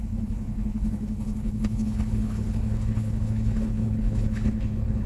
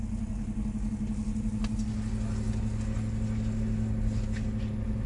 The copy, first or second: first